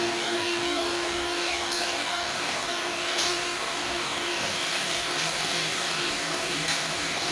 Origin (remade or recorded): remade